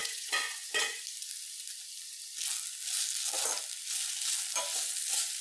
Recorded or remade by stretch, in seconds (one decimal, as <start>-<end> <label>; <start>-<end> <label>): 0.0-1.0 remade; 1.0-5.4 recorded